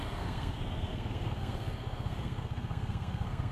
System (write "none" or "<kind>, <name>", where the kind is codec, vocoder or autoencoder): codec, SNAC